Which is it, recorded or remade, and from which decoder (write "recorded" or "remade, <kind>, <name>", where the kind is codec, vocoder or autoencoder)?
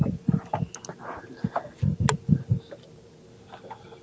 recorded